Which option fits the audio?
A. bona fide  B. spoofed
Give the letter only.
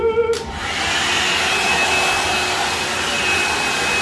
A